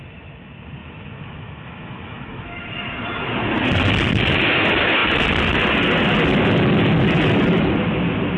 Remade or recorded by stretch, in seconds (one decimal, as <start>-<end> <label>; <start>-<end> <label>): 0.0-0.8 recorded; 0.8-2.6 remade; 2.6-8.4 recorded